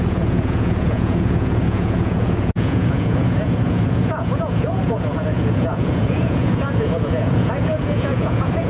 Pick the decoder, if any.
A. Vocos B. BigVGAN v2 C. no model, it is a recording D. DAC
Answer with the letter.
A